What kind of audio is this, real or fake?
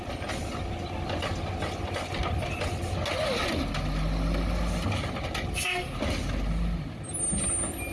real